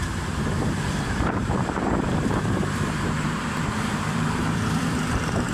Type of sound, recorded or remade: remade